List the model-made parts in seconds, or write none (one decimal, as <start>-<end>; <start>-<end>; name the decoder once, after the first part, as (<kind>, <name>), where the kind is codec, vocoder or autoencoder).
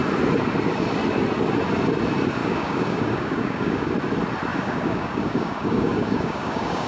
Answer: 2.4-3.9 (codec, DAC); 4.5-6.9